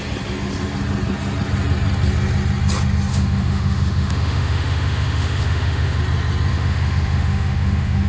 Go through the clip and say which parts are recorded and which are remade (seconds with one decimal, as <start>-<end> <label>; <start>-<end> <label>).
0.0-3.1 recorded; 3.1-6.0 remade; 6.0-6.5 recorded; 6.5-8.1 remade